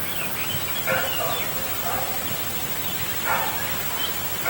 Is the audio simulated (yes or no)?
no